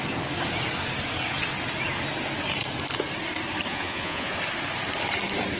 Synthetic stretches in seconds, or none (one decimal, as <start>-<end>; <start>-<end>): 3.7-4.3